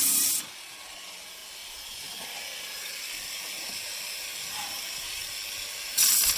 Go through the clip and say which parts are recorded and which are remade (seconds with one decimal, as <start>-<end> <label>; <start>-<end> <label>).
0.0-6.4 recorded